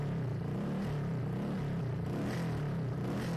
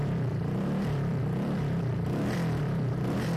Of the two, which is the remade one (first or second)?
second